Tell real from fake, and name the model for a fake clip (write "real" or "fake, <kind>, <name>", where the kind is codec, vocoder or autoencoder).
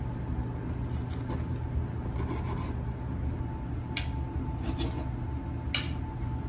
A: real